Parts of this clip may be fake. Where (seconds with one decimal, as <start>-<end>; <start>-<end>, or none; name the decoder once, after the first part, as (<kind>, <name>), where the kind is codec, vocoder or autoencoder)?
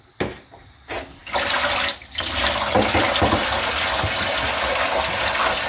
none